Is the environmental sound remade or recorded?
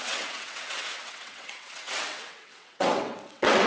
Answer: remade